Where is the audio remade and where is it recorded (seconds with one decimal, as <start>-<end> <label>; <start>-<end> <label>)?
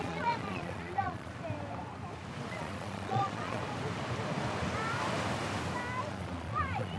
0.0-1.3 remade; 1.3-2.5 recorded; 2.5-3.6 remade; 3.6-6.1 recorded; 6.1-7.0 remade